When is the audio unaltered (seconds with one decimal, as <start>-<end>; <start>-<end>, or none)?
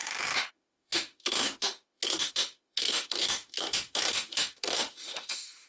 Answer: none